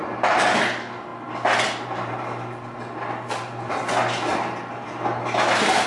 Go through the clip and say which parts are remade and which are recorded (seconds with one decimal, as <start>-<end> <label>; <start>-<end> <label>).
0.0-5.9 recorded